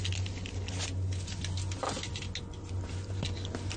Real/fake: real